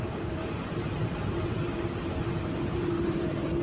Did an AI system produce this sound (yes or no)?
yes